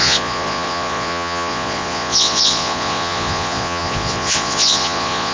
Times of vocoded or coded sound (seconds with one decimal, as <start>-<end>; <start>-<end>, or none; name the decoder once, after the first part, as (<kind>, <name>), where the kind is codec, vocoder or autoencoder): 0.0-5.3 (vocoder, Vocos)